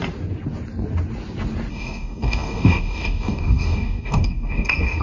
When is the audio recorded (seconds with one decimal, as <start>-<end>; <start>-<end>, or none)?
0.0-1.7